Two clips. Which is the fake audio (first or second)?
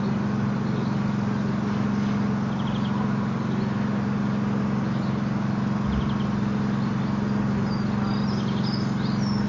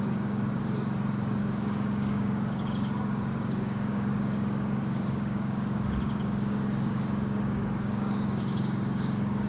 second